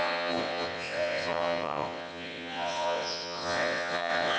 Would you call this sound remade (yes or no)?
yes